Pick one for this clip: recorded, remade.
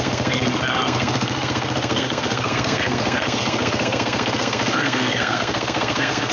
remade